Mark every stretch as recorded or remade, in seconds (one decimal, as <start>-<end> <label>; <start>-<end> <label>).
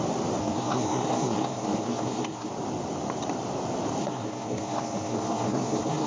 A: 0.0-0.4 recorded; 0.4-2.5 remade; 2.5-4.0 recorded; 4.0-6.1 remade